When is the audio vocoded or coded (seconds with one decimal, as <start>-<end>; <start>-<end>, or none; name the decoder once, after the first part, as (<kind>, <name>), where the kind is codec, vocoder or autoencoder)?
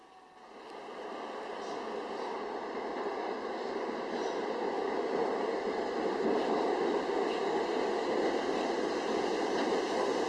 none